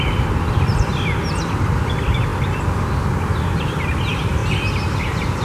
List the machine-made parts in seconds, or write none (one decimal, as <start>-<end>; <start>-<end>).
0.0-0.9; 1.5-4.4; 5.0-5.4